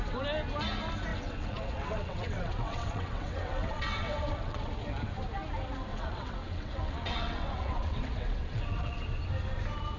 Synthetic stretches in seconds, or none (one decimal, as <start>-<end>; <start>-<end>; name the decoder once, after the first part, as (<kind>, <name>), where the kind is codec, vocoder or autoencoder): 1.1-4.7 (vocoder, WaveNeXt); 5.9-8.9